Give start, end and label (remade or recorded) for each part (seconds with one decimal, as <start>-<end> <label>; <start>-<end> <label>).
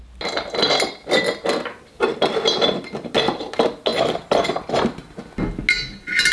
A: 0.0-6.3 recorded